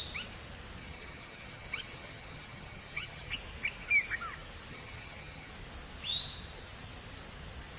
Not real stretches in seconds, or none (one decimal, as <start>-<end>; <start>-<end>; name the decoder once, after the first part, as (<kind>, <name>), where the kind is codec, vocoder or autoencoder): 0.8-3.3 (vocoder, HiFi-GAN); 4.7-5.5